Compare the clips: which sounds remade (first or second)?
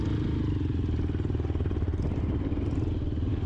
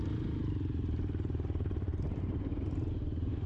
second